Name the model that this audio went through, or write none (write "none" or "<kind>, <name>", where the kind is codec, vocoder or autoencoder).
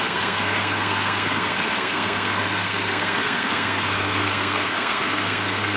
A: codec, SNAC